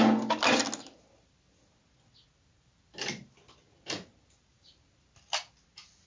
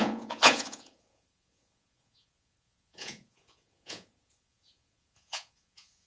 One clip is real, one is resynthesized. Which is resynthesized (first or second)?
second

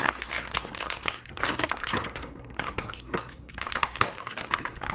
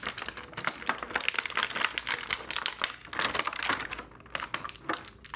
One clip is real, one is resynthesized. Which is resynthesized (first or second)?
first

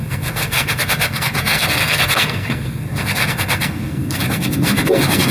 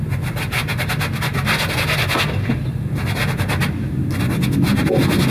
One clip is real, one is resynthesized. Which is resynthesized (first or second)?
first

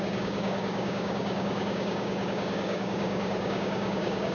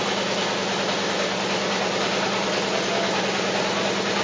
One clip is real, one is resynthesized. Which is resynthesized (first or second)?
first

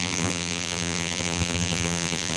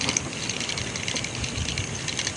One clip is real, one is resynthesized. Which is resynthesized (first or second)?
first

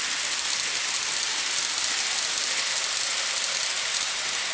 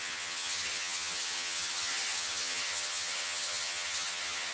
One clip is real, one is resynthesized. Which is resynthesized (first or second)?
second